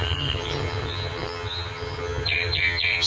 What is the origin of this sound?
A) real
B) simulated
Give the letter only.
B